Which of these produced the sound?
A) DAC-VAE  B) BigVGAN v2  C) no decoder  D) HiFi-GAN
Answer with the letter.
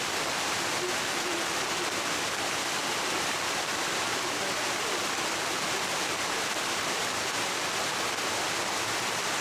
C